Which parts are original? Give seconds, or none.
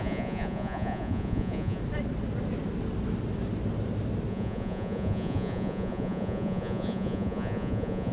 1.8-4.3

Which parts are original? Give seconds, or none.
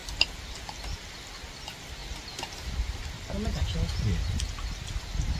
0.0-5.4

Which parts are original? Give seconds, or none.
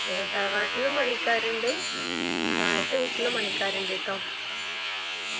1.1-1.7; 3.1-4.5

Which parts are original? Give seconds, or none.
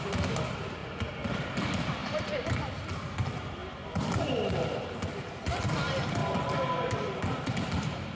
0.0-0.8; 1.5-2.0; 2.5-3.6; 4.5-6.2; 7.2-8.1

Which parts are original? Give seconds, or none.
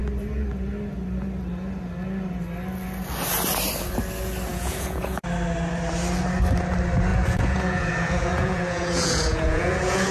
0.0-4.5; 5.2-7.1